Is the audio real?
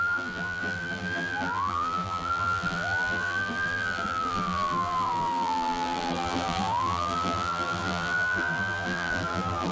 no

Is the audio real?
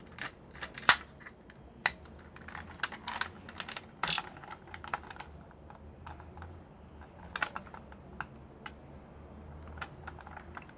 yes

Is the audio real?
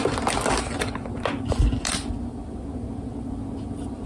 yes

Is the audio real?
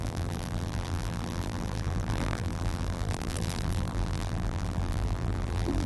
no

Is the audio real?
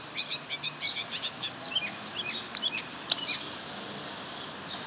yes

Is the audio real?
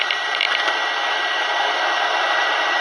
no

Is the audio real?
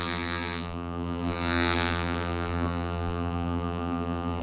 no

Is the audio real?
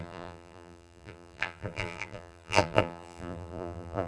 no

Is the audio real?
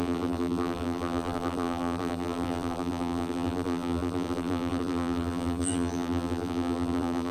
no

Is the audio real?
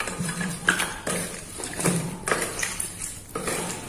no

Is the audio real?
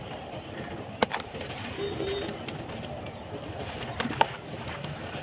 no